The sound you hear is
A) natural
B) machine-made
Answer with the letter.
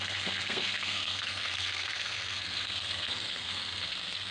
B